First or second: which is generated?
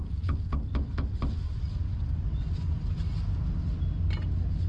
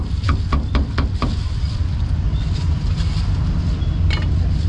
second